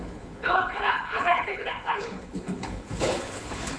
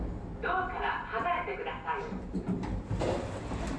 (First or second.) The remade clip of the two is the first